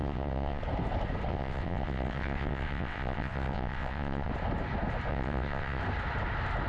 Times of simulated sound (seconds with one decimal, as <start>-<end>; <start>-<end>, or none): 0.0-0.6; 1.3-4.3; 5.1-5.8